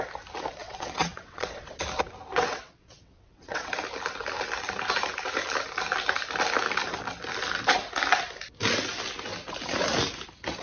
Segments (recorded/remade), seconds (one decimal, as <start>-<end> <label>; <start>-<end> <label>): 0.0-0.6 recorded; 0.6-1.8 remade; 1.8-2.3 recorded; 2.3-3.7 remade; 3.7-10.6 recorded